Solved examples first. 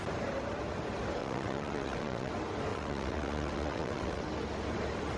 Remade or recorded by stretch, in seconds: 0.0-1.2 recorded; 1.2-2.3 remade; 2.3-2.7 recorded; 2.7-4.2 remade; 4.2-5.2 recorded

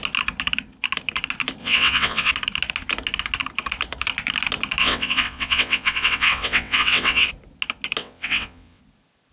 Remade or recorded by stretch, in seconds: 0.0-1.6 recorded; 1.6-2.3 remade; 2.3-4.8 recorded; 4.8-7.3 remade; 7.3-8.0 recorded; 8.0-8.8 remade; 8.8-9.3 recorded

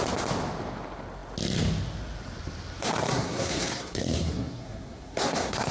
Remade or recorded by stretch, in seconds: 0.0-2.8 recorded; 2.8-5.7 remade